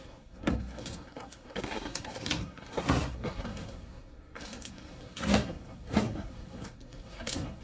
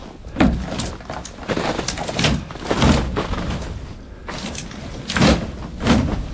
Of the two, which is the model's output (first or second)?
first